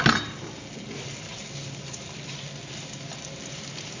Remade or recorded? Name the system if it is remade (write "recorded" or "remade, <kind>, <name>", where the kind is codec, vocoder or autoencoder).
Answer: recorded